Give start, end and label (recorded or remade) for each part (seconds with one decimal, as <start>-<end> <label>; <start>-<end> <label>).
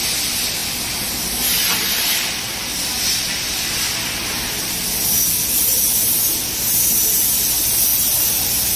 0.0-7.9 recorded; 7.9-8.8 remade